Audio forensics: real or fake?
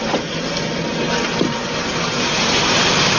real